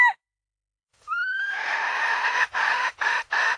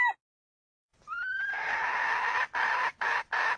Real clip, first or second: second